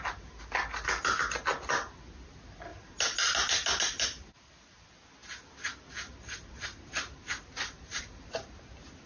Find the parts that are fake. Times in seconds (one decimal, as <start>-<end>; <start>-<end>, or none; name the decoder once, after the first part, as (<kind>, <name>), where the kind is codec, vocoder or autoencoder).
none